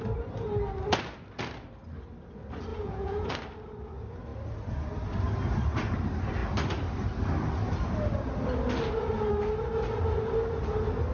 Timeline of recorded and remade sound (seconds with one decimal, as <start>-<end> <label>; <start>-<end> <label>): 0.0-2.7 recorded; 2.7-3.3 remade; 3.3-11.1 recorded